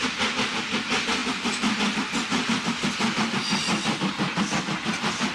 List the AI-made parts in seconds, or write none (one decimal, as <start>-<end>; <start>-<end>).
none